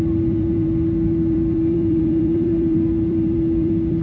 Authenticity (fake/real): fake